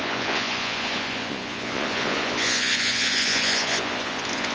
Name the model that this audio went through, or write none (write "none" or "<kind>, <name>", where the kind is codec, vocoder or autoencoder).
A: vocoder, Vocos